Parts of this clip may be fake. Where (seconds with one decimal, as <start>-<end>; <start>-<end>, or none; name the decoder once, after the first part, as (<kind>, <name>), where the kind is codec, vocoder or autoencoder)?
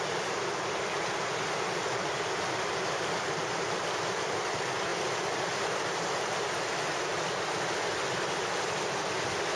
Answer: 4.9-5.9 (vocoder, BigVGAN v2)